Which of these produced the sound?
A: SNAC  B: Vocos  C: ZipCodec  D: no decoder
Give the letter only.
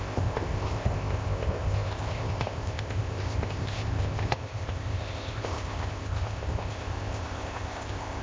C